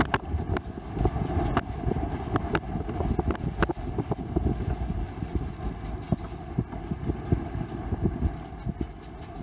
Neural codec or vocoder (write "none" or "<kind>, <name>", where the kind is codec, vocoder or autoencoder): none